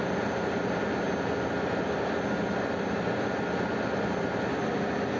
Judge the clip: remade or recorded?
recorded